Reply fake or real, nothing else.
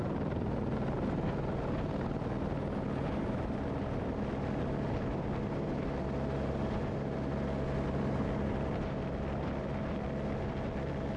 real